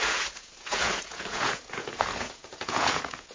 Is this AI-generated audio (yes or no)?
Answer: yes